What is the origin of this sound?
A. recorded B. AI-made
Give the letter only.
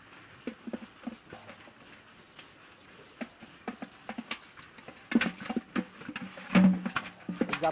A